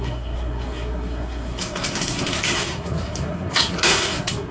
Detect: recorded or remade remade